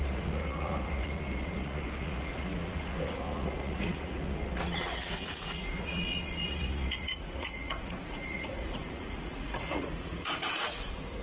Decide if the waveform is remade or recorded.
remade